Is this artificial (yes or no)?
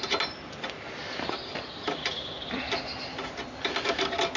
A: no